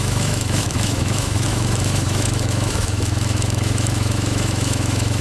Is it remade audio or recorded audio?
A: remade